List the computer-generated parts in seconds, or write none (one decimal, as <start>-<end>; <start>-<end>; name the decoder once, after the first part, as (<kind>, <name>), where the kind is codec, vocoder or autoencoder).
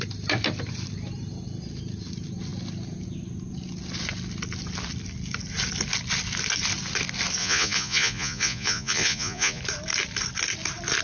7.4-9.6 (vocoder, Vocos)